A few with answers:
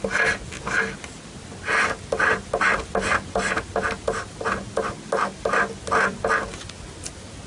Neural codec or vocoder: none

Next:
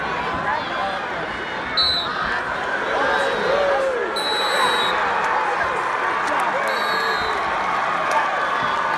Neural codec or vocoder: none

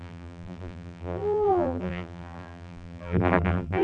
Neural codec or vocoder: vocoder, BigVGAN v2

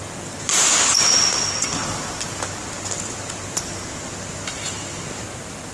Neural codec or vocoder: none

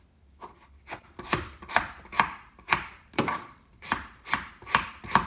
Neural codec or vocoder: vocoder, BigVGAN v2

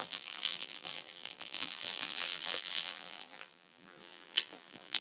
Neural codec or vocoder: vocoder, BigVGAN v2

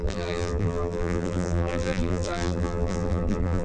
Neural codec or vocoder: vocoder, BigVGAN v2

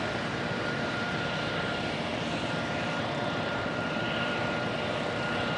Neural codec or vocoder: vocoder, BigVGAN v2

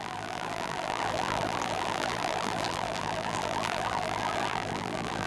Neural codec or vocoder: vocoder, BigVGAN v2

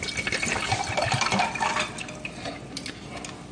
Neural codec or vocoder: none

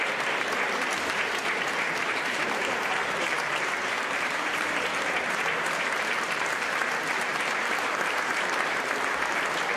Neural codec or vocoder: vocoder, BigVGAN v2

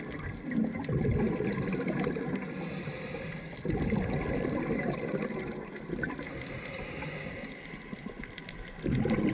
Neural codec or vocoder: none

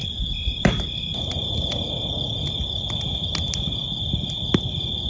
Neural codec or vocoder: none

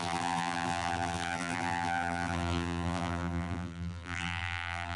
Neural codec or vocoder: vocoder, BigVGAN v2